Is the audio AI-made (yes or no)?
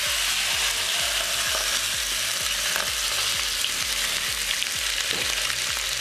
no